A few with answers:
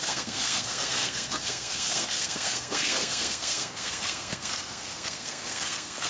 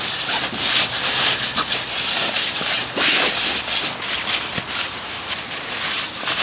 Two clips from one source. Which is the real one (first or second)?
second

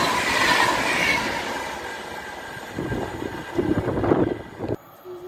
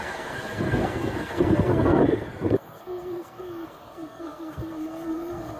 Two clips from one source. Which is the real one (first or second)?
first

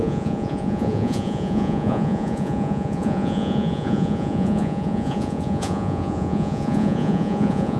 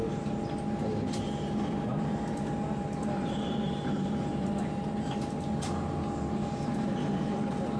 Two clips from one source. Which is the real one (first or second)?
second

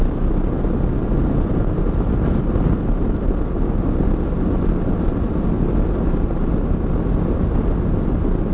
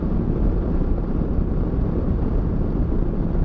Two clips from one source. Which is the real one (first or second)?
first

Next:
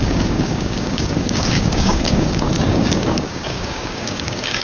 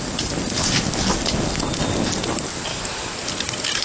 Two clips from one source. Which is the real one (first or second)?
second